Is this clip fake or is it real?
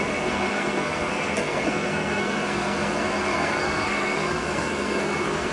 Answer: fake